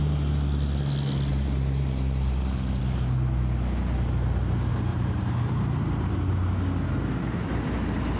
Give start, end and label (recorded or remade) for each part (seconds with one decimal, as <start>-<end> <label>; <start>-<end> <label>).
0.0-1.3 recorded; 1.3-2.8 remade; 2.8-4.9 recorded; 4.9-6.3 remade; 6.3-8.2 recorded